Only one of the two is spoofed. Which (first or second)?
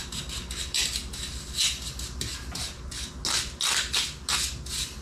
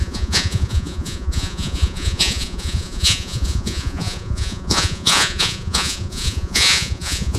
second